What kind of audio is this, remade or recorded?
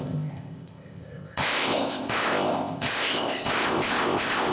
remade